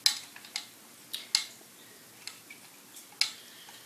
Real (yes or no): yes